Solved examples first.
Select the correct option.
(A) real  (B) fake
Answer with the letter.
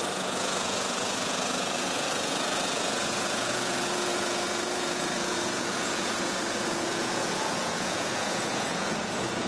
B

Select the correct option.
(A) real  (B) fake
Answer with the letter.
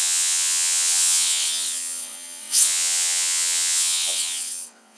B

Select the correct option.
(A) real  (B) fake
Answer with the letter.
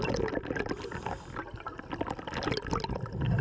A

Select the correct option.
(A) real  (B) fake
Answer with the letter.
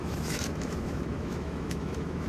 B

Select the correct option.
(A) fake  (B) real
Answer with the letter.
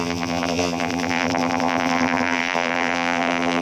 A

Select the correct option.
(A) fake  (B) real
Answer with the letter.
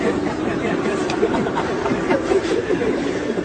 A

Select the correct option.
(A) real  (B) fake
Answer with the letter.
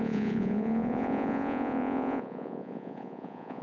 B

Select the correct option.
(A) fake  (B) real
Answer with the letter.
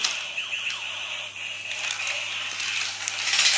B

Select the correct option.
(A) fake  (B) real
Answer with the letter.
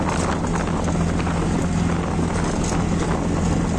B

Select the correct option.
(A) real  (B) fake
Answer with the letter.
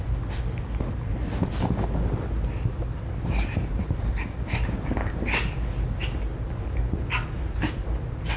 A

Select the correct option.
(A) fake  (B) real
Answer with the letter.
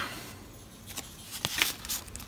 B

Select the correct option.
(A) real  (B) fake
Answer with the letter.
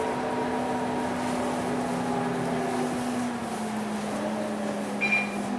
A